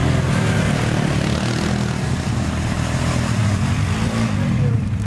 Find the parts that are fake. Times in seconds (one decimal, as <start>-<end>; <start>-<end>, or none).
2.3-5.1